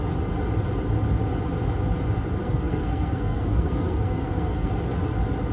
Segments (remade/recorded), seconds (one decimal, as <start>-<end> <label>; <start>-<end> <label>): 0.0-2.4 recorded; 2.4-4.7 remade; 4.7-5.5 recorded